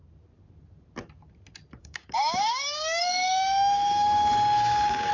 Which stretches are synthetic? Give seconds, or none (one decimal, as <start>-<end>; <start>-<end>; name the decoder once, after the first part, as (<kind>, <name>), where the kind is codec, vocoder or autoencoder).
1.8-5.1 (codec, DAC)

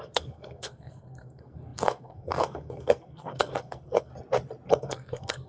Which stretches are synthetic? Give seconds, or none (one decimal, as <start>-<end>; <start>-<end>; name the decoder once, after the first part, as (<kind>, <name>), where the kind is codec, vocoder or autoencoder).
0.0-4.1 (codec, SNAC); 4.7-5.5

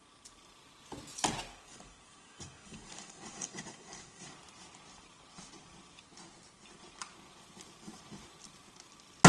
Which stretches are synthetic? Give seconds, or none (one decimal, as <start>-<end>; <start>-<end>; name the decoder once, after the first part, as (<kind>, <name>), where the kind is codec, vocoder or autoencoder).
1.5-4.3 (codec, DAC)

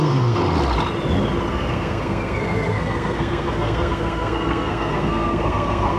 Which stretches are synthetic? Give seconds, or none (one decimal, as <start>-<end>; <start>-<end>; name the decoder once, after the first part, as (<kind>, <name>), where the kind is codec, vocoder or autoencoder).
0.0-0.4 (codec, SNAC); 1.5-6.0

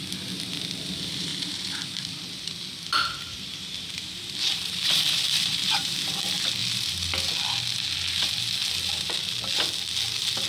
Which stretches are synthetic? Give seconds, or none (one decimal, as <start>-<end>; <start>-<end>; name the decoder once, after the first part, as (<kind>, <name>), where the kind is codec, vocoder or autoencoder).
1.3-2.0 (vocoder, BigVGAN v2); 4.5-6.1

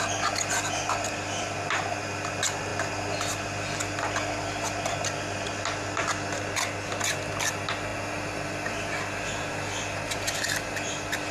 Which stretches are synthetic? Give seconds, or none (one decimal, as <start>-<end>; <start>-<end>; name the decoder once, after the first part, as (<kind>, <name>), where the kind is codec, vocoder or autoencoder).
none

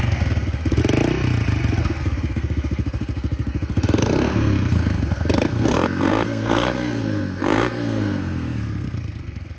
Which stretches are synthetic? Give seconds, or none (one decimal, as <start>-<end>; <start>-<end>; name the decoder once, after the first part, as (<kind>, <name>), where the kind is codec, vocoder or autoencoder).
0.0-0.8 (codec, SNAC); 1.8-9.6